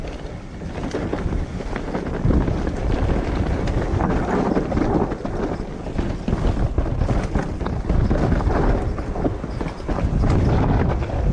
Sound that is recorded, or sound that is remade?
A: recorded